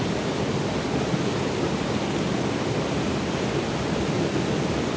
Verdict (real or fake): real